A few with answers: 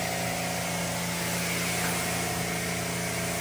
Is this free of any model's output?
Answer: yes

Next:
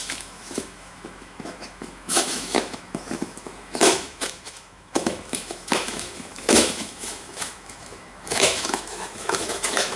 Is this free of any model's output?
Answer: no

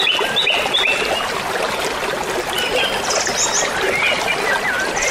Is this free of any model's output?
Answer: yes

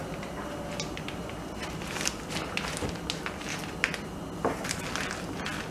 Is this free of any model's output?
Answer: yes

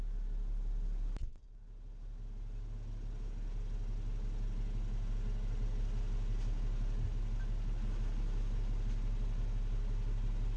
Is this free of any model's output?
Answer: yes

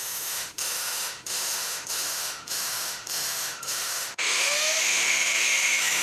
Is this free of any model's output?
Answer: no